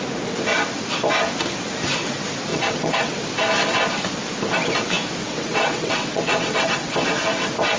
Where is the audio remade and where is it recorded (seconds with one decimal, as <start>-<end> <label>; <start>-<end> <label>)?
0.0-2.5 recorded; 2.5-3.2 remade; 3.2-5.2 recorded; 5.2-7.1 remade; 7.1-7.8 recorded